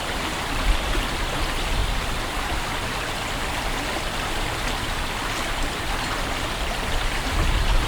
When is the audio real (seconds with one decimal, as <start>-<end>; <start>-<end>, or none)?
0.0-7.9